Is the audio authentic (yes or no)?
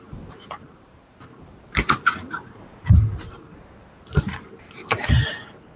no